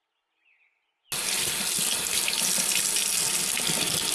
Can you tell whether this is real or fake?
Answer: real